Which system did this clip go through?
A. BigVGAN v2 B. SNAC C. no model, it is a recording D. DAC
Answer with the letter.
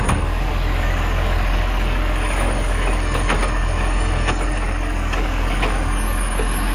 D